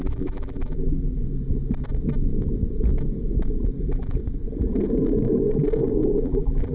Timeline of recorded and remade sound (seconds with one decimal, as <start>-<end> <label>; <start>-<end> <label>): 0.0-1.2 remade; 1.2-3.8 recorded; 3.8-4.2 remade; 4.2-6.2 recorded; 6.2-6.7 remade